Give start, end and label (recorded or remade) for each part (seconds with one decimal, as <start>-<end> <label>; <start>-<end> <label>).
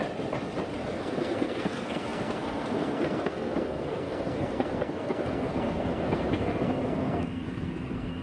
0.0-0.9 recorded; 0.9-8.2 remade